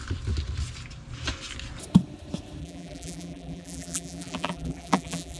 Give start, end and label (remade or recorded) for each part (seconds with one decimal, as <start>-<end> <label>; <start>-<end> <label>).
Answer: 0.0-2.6 recorded; 2.6-5.4 remade